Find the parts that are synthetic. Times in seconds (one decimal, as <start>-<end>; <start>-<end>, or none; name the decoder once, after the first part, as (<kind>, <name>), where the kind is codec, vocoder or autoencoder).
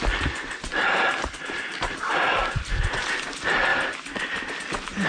0.7-1.9 (vocoder, BigVGAN v2); 3.7-4.5